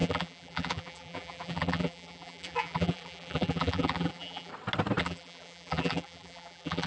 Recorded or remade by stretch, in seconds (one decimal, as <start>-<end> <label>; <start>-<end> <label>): 0.0-4.5 remade; 4.5-5.0 recorded; 5.0-6.9 remade